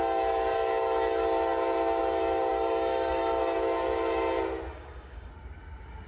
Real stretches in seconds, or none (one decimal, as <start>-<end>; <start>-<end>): 0.0-2.5; 3.4-4.7; 5.3-6.1